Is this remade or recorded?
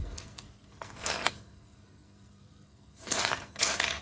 remade